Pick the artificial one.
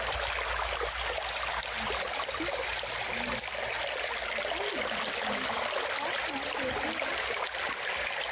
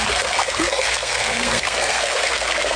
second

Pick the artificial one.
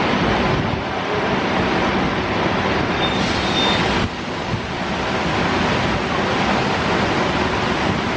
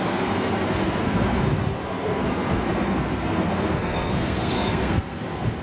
second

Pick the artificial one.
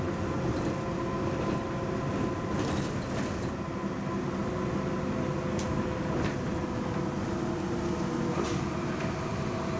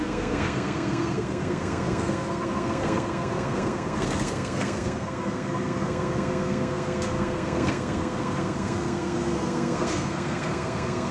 second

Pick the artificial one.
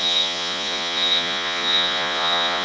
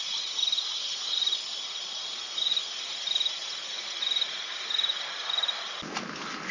first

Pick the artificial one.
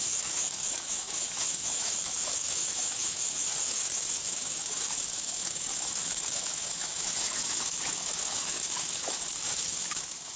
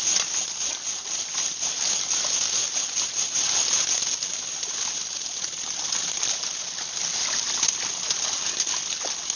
first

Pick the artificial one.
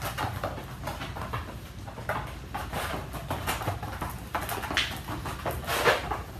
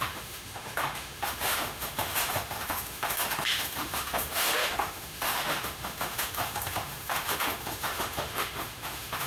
second